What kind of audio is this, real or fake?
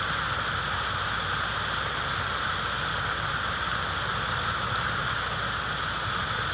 real